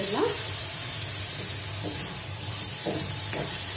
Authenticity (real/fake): fake